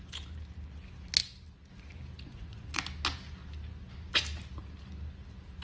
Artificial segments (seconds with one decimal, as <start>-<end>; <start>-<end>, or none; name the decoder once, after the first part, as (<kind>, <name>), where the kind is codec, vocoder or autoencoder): 2.3-2.8 (vocoder, Vocos)